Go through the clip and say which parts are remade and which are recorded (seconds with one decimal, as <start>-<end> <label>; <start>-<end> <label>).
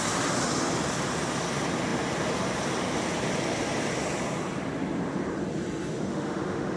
0.0-6.1 recorded; 6.1-6.8 remade